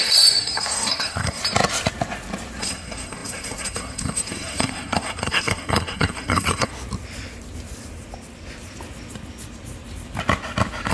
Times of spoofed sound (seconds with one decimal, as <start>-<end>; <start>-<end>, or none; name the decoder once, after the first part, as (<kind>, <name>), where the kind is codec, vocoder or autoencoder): 0.0-1.4 (codec, SNAC); 2.6-6.7

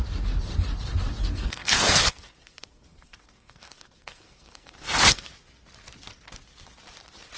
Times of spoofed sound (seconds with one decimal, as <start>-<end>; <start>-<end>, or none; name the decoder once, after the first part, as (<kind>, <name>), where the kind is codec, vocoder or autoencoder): 1.2-5.3 (codec, SNAC)

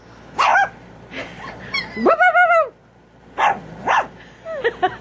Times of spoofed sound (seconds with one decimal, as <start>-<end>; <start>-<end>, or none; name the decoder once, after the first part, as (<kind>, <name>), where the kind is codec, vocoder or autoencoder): 0.5-2.1 (vocoder, BigVGAN v2)